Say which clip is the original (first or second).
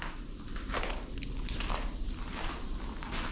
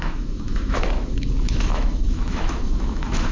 first